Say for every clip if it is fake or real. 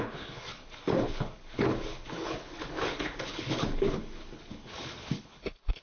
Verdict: fake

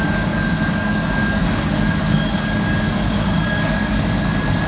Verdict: fake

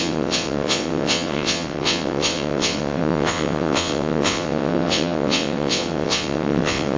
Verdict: fake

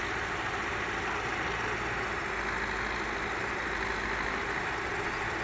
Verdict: real